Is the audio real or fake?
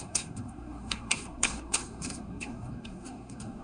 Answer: fake